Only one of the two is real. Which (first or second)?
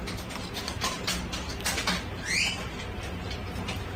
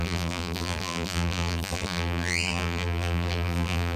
first